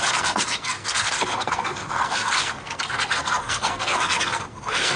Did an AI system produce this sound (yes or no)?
yes